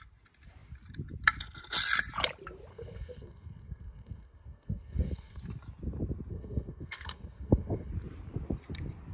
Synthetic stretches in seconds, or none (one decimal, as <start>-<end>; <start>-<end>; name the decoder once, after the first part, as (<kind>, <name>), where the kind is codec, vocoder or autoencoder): 2.7-5.4 (codec, SNAC); 6.3-7.9